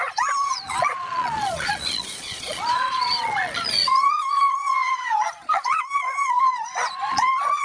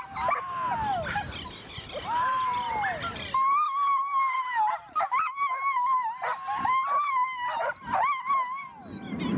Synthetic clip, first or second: first